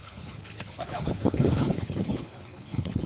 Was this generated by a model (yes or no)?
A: yes